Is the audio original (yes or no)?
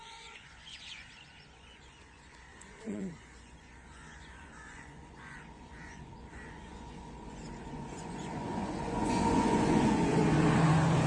no